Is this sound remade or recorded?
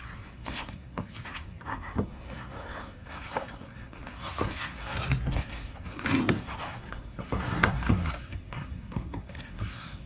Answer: remade